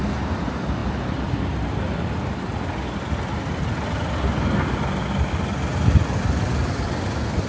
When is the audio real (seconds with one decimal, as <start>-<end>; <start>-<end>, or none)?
0.0-7.5

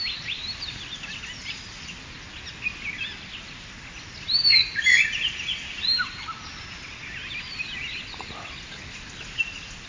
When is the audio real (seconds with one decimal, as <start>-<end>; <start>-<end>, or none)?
0.0-9.9

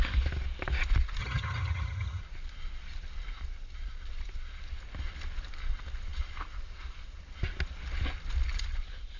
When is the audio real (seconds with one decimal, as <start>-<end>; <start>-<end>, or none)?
0.0-1.2; 2.2-9.2

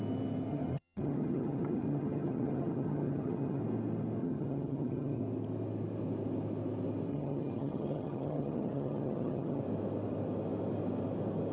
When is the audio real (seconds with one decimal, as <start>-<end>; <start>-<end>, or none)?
0.0-0.5; 3.6-4.2; 5.2-7.1; 9.6-11.5